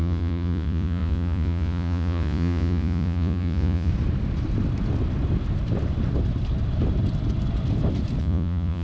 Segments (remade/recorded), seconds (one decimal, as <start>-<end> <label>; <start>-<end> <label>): 0.0-3.9 remade; 3.9-8.2 recorded; 8.2-8.8 remade

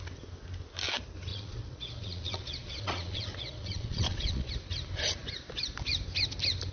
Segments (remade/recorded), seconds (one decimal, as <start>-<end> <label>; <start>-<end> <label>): 0.0-1.3 recorded; 1.3-4.5 remade; 4.5-6.7 recorded

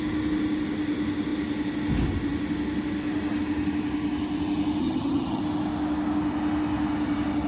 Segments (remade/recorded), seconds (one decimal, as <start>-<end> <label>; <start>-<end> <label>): 0.0-4.8 recorded; 4.8-5.4 remade; 5.4-7.5 recorded

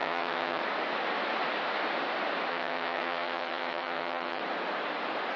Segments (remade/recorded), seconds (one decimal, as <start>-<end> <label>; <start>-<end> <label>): 0.0-0.6 remade; 0.6-2.5 recorded; 2.5-4.4 remade; 4.4-5.4 recorded